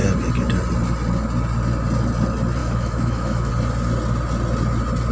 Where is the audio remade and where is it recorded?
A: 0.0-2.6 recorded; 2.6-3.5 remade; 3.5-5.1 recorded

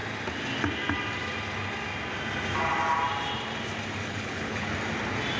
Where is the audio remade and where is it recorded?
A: 0.0-4.0 recorded; 4.0-4.7 remade; 4.7-5.4 recorded

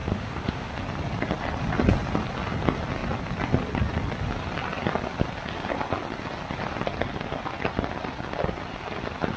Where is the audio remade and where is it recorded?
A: 0.0-0.7 remade; 0.7-9.4 recorded

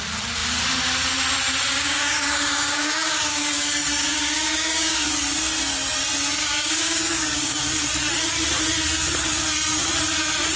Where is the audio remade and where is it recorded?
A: 0.0-1.7 recorded; 1.7-5.1 remade; 5.1-6.4 recorded; 6.4-7.6 remade; 7.6-10.6 recorded

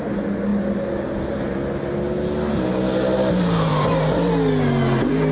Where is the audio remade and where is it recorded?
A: 0.0-5.3 recorded

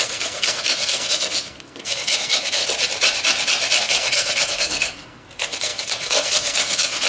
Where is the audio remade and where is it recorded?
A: 0.0-2.6 remade; 2.6-3.8 recorded; 3.8-7.1 remade

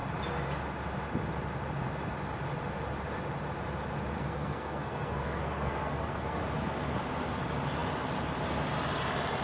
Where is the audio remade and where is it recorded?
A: 0.0-4.2 recorded; 4.2-6.4 remade; 6.4-9.4 recorded